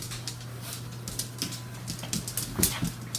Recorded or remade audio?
recorded